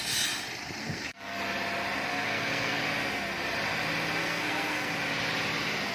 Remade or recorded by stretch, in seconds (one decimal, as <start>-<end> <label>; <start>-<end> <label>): 0.0-0.8 recorded; 0.8-1.4 remade; 1.4-2.1 recorded; 2.1-2.8 remade; 2.8-4.2 recorded; 4.2-4.9 remade; 4.9-5.9 recorded